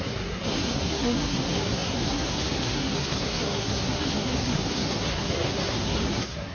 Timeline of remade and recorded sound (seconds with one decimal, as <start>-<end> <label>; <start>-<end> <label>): 0.0-6.5 remade